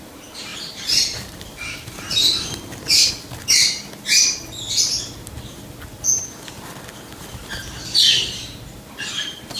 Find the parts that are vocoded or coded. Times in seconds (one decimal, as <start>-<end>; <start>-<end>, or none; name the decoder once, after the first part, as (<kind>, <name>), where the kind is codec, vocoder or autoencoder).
0.5-3.1 (vocoder, BigVGAN v2)